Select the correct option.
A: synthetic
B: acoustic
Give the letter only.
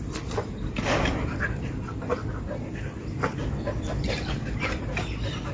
B